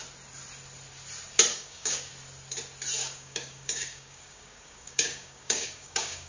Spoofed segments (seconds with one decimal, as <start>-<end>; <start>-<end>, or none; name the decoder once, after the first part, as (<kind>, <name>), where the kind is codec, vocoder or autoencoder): 1.5-2.1 (codec, DAC); 3.0-6.3